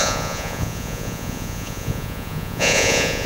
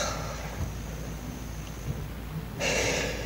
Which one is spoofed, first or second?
first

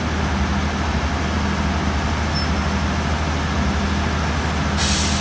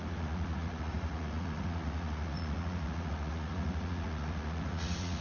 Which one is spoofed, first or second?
second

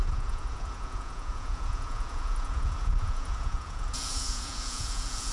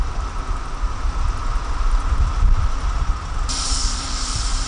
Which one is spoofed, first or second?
first